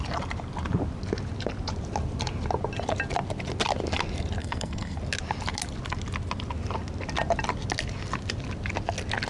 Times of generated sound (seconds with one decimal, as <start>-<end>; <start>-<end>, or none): 4.4-5.0